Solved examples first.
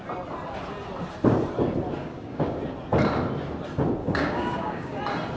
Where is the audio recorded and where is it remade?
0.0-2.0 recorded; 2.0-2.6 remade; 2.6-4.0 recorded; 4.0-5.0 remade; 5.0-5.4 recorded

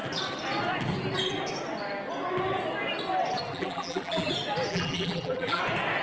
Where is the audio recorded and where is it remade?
0.0-3.5 recorded; 3.5-4.3 remade; 4.3-4.7 recorded; 4.7-5.6 remade; 5.6-6.0 recorded

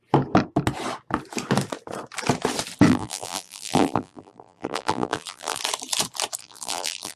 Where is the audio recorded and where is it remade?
0.0-2.9 recorded; 2.9-5.6 remade; 5.6-6.4 recorded; 6.4-7.2 remade

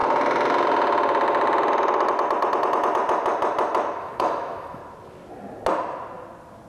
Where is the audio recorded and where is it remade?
0.0-4.0 recorded; 4.0-4.8 remade; 4.8-6.7 recorded

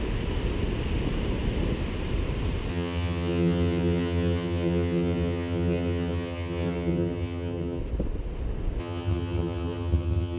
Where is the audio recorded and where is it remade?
0.0-2.7 recorded; 2.7-7.8 remade; 7.8-8.8 recorded; 8.8-10.4 remade

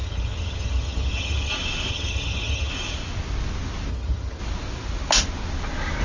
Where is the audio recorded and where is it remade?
0.0-1.5 remade; 1.5-1.9 recorded; 1.9-2.7 remade; 2.7-3.9 recorded; 3.9-4.4 remade; 4.4-6.0 recorded

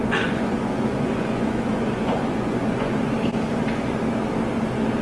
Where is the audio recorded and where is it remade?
0.0-3.0 remade; 3.0-3.5 recorded; 3.5-4.0 remade; 4.0-5.0 recorded

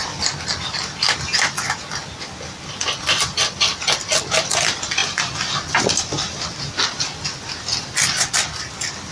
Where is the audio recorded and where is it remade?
0.0-9.1 recorded